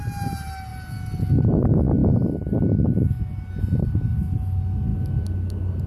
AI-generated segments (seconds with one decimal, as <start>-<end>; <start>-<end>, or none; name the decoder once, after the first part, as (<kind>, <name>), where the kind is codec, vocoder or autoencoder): none